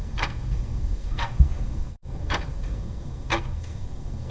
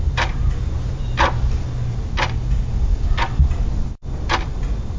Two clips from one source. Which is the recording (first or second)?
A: second